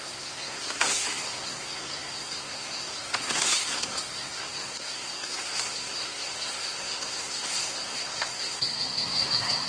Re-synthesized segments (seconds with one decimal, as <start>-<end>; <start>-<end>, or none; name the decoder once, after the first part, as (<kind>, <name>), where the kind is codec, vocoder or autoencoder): 0.0-9.7 (codec, SNAC)